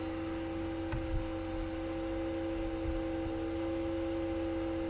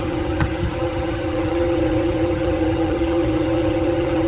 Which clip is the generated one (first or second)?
second